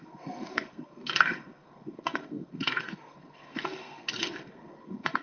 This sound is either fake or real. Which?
fake